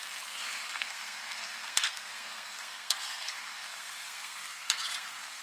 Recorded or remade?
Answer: remade